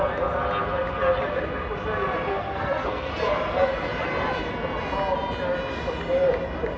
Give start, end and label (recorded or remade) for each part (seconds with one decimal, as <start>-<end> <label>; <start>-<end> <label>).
0.0-2.3 recorded; 2.3-3.2 remade; 3.2-6.8 recorded